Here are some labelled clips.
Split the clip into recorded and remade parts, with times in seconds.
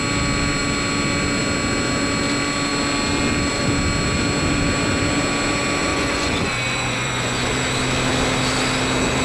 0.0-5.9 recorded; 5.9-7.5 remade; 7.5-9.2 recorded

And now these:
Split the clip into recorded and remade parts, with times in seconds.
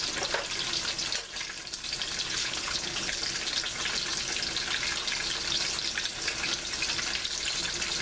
0.0-2.4 recorded; 2.4-3.2 remade; 3.2-8.0 recorded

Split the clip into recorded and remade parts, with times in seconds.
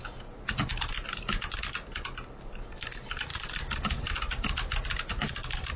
0.0-5.8 recorded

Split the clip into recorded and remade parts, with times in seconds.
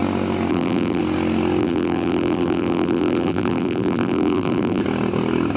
0.0-0.5 recorded; 0.5-1.0 remade; 1.0-1.6 recorded; 1.6-4.8 remade; 4.8-5.6 recorded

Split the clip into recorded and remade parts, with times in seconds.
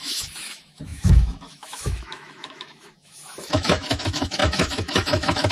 0.0-5.5 remade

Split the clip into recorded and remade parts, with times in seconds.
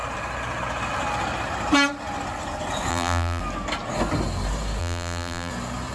0.0-2.9 recorded; 2.9-3.4 remade; 3.4-4.8 recorded; 4.8-5.5 remade; 5.5-5.9 recorded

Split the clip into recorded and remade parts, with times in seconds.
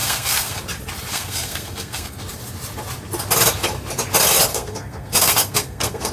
0.0-0.6 remade; 0.6-1.1 recorded; 1.1-2.2 remade; 2.2-4.5 recorded; 4.5-6.1 remade